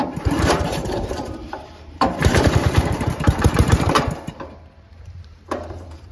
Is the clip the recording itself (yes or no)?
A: no